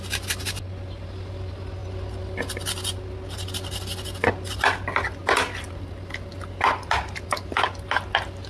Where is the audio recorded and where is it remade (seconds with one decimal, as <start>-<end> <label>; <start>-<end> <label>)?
0.0-8.5 recorded

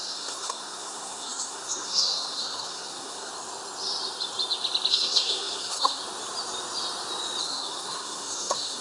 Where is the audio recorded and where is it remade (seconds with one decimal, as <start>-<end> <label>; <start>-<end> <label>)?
0.0-3.3 remade; 3.3-4.9 recorded; 4.9-6.0 remade; 6.0-7.4 recorded; 7.4-8.8 remade

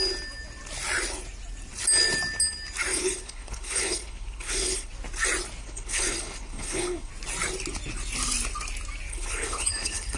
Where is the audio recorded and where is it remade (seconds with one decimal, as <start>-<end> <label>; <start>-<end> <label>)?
0.0-2.9 recorded; 2.9-4.9 remade; 4.9-5.6 recorded; 5.6-7.1 remade; 7.1-9.1 recorded; 9.1-10.2 remade

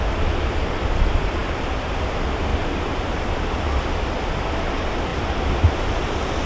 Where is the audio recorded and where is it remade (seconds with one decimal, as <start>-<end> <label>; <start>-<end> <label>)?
0.0-2.5 recorded; 2.5-3.0 remade; 3.0-6.5 recorded